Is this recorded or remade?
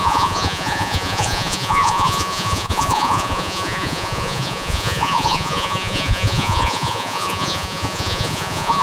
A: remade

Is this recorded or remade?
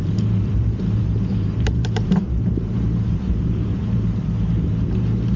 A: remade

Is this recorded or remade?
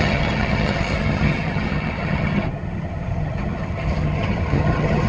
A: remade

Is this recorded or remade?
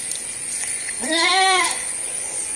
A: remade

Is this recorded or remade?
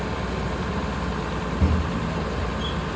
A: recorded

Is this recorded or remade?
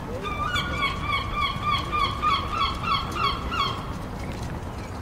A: recorded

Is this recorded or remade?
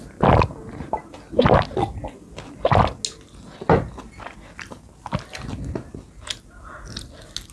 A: recorded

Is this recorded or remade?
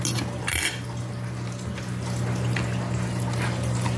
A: recorded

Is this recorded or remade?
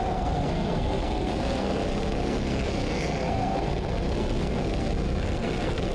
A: remade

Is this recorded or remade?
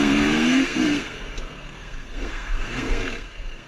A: remade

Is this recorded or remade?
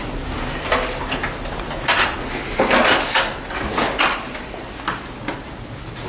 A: recorded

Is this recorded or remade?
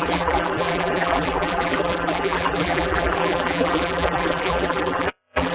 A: remade